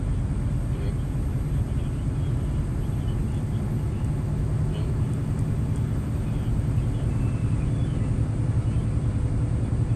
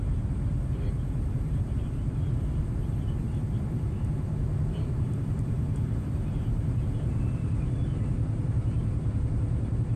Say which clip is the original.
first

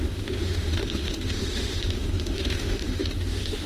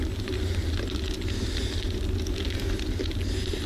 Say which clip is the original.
second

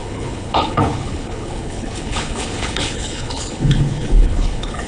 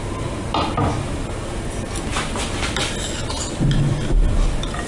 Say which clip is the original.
second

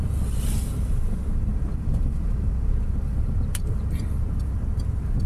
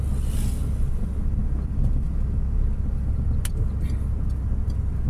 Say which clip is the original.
second